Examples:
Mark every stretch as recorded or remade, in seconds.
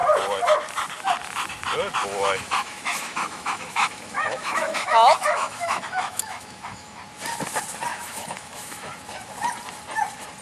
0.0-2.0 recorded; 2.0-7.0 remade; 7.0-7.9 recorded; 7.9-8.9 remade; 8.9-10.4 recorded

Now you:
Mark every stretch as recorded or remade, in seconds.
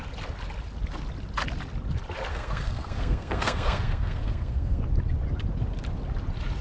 0.0-2.3 recorded; 2.3-4.8 remade; 4.8-6.6 recorded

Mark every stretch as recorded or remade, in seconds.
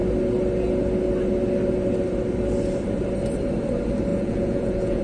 0.0-4.1 recorded; 4.1-5.0 remade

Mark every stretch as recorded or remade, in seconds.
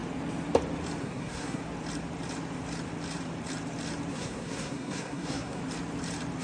0.0-1.0 recorded; 1.0-1.6 remade; 1.6-4.1 recorded; 4.1-5.6 remade; 5.6-6.4 recorded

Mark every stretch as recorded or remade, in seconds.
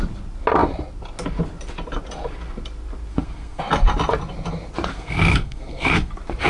0.0-3.1 recorded; 3.1-3.6 remade; 3.6-4.9 recorded; 4.9-6.1 remade; 6.1-6.5 recorded